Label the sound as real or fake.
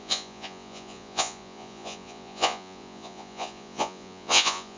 fake